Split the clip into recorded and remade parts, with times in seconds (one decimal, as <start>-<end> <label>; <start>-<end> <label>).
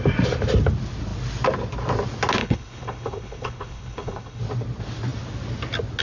0.0-2.4 recorded; 2.4-4.4 remade; 4.4-6.0 recorded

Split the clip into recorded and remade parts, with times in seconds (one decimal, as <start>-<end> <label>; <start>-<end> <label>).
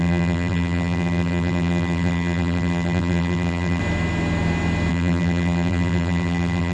0.0-3.8 remade; 3.8-4.9 recorded; 4.9-6.7 remade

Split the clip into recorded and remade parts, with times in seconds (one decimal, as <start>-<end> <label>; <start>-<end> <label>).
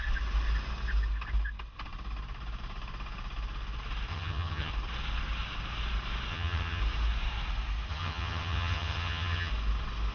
0.0-4.1 recorded; 4.1-4.7 remade; 4.7-6.3 recorded; 6.3-6.8 remade; 6.8-7.9 recorded; 7.9-9.5 remade; 9.5-10.1 recorded